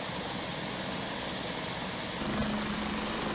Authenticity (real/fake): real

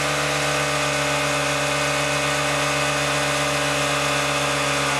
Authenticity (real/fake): real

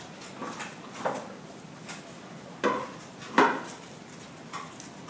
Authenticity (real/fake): real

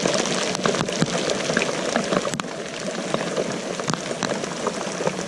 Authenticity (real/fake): real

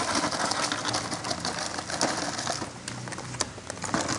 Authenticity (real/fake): real